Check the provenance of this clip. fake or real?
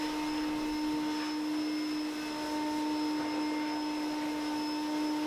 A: real